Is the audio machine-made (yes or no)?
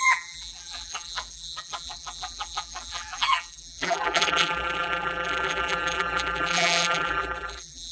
yes